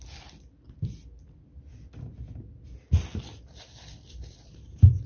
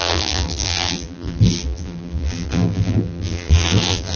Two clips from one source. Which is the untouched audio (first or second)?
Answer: first